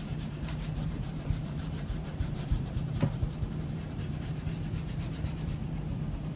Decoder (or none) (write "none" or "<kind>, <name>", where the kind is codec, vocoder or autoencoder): vocoder, BigVGAN v2